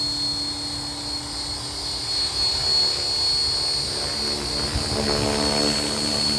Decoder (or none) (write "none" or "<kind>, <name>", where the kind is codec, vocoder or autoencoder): none